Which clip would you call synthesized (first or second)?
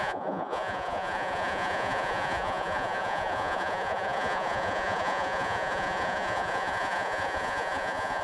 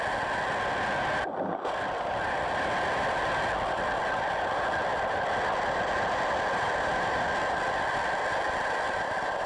first